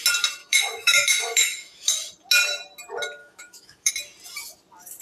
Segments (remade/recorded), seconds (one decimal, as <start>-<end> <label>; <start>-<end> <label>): 0.0-0.4 recorded; 0.4-1.9 remade; 1.9-3.2 recorded; 3.2-3.9 remade; 3.9-5.0 recorded